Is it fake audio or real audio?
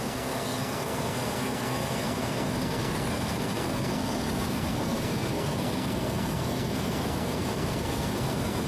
fake